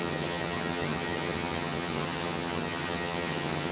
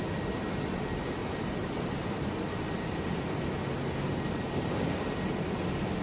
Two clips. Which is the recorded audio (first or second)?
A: second